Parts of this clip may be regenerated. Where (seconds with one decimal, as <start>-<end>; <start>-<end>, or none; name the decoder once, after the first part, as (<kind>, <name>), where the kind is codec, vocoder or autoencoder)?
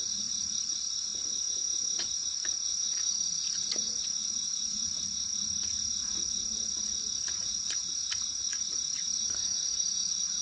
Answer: 0.0-1.1 (vocoder, Vocos); 2.0-5.3; 7.3-10.4